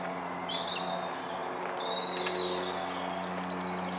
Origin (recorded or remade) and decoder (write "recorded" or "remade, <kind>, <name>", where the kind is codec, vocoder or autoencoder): recorded